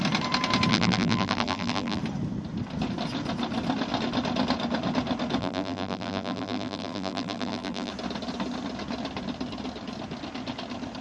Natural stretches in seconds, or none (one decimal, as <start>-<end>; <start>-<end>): 0.0-0.7; 2.0-5.4; 7.9-11.0